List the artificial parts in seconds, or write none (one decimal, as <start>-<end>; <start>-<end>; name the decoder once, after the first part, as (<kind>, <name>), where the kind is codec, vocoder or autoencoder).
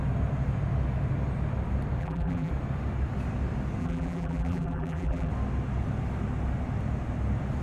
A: 2.0-2.5 (vocoder, BigVGAN v2); 3.8-5.3